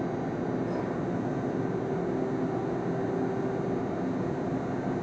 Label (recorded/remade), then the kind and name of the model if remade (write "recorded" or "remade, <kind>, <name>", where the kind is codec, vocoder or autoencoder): recorded